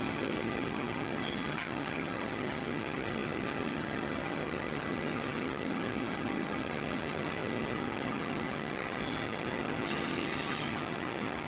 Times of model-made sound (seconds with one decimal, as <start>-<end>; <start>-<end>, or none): 0.0-11.5